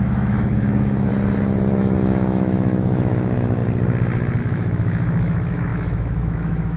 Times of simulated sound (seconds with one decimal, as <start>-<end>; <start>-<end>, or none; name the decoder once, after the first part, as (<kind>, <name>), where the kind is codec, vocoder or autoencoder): 0.0-1.1 (autoencoder, DAC-VAE); 1.7-3.6; 4.4-6.8